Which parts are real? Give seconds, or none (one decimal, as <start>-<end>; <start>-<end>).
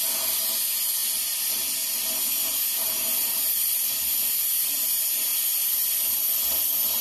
0.0-7.0